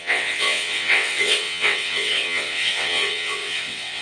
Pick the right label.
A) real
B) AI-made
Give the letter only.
B